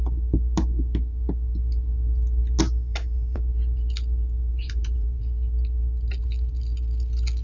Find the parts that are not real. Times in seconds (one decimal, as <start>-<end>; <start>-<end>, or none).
4.5-5.2